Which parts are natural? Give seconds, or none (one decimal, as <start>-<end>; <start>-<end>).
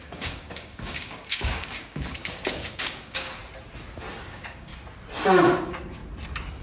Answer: 3.4-4.2; 4.7-5.6; 6.0-6.6